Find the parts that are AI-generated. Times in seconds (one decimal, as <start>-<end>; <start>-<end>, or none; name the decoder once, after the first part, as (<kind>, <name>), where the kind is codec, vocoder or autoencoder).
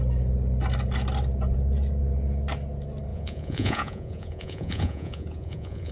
3.1-5.9 (vocoder, Vocos)